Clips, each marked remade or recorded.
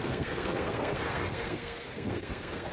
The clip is remade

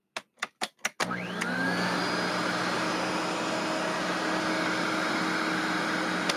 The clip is recorded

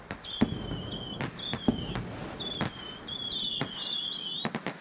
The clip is recorded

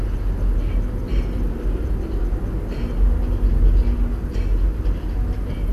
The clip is recorded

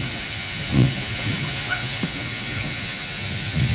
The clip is remade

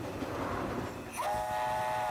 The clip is recorded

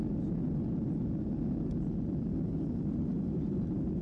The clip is recorded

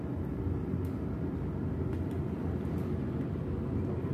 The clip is recorded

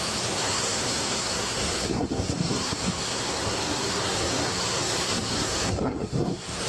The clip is remade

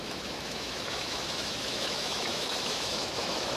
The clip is remade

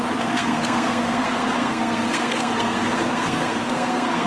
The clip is remade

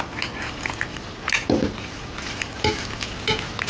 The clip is recorded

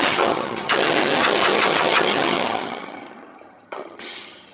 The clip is remade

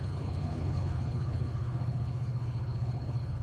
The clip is remade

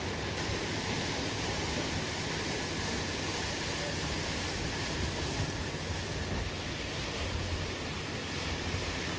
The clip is recorded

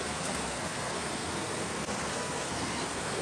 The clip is remade